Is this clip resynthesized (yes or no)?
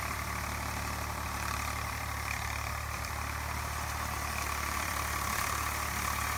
yes